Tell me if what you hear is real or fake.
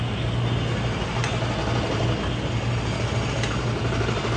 real